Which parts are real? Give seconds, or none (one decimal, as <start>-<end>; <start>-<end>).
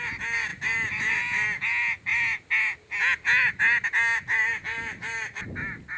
0.0-6.0